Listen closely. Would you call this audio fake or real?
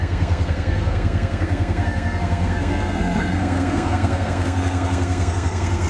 fake